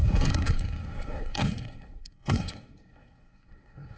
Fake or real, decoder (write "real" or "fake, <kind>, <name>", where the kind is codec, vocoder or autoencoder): fake, codec, SNAC